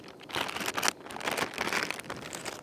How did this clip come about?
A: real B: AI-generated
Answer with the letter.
A